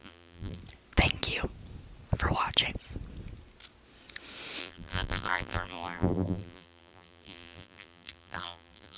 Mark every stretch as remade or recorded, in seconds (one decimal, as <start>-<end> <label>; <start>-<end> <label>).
0.0-0.6 remade; 0.6-4.6 recorded; 4.6-9.0 remade